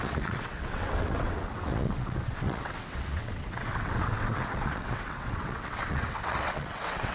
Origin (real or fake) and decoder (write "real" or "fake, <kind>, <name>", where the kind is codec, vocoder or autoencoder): fake, vocoder, WaveNeXt